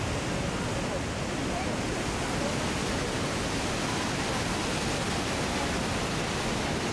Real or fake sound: real